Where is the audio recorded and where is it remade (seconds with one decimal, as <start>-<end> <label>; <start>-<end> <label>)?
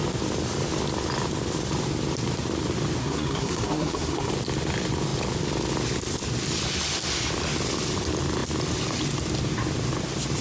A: 0.0-3.0 recorded; 3.0-4.3 remade; 4.3-10.4 recorded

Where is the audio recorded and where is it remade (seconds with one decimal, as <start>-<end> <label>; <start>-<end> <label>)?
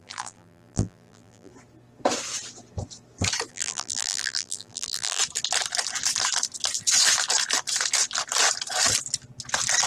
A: 0.0-1.5 remade; 1.5-3.5 recorded; 3.5-5.2 remade; 5.2-9.9 recorded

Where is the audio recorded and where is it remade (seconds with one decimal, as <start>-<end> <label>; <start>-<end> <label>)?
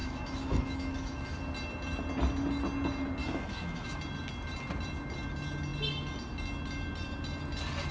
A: 0.0-1.4 remade; 1.4-3.2 recorded; 3.2-4.0 remade; 4.0-7.9 recorded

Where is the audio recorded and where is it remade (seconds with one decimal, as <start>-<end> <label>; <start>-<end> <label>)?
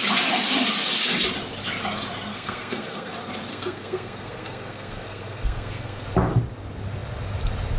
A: 0.0-2.3 recorded; 2.3-3.1 remade; 3.1-3.5 recorded; 3.5-6.0 remade; 6.0-7.8 recorded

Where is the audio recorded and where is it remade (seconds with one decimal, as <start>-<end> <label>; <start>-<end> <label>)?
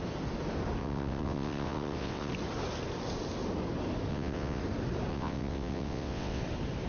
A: 0.0-0.8 recorded; 0.8-2.3 remade; 2.3-4.1 recorded; 4.1-4.6 remade; 4.6-5.1 recorded; 5.1-6.4 remade; 6.4-6.9 recorded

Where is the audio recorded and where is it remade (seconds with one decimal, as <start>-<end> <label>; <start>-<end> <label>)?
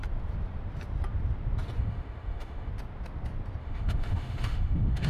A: 0.0-1.8 recorded; 1.8-2.7 remade; 2.7-3.6 recorded; 3.6-5.1 remade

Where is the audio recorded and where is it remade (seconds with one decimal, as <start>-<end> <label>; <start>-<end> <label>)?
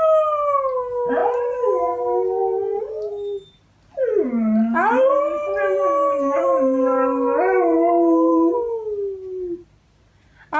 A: 0.0-10.6 recorded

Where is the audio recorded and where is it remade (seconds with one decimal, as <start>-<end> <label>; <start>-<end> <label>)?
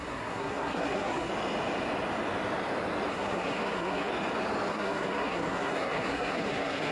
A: 0.0-1.3 remade; 1.3-3.1 recorded; 3.1-4.1 remade; 4.1-4.7 recorded; 4.7-6.9 remade